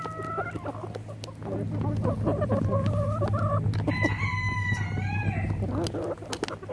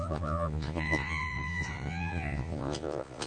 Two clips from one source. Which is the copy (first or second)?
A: second